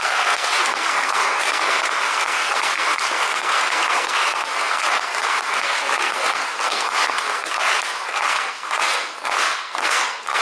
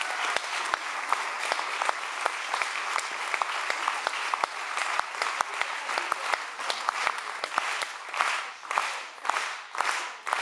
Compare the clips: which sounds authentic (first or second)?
second